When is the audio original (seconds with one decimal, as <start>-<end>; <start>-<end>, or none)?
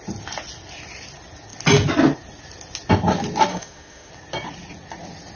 0.0-3.5; 4.1-5.4